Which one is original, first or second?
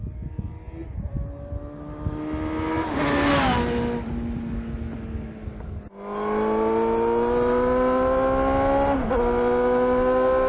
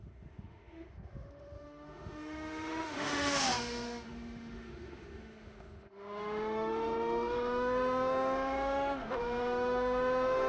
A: first